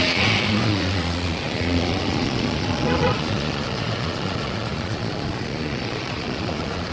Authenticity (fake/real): fake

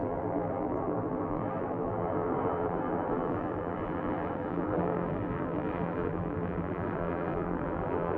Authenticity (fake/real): fake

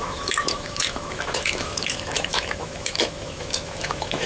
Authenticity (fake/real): fake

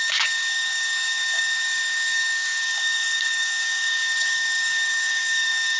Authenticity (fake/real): fake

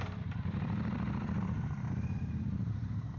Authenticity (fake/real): fake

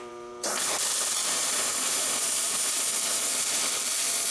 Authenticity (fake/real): fake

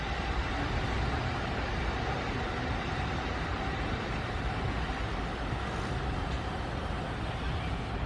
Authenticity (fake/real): real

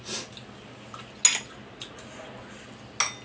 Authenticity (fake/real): real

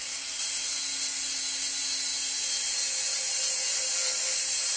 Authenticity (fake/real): real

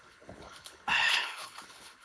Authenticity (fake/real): fake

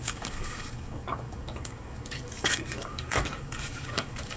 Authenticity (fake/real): fake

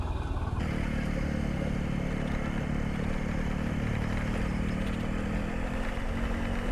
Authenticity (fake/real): real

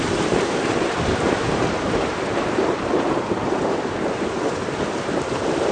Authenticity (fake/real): fake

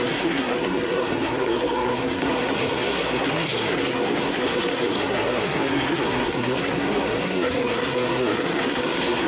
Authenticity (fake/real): fake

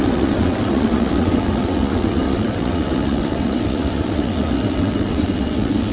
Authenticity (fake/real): fake